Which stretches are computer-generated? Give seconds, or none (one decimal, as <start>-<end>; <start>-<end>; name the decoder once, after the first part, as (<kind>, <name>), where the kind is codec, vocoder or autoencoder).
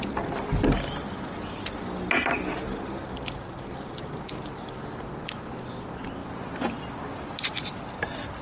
3.0-4.3 (vocoder, BigVGAN v2)